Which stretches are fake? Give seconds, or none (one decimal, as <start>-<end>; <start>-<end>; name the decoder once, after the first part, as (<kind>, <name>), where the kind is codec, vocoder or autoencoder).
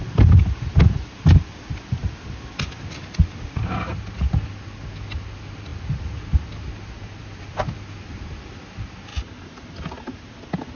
none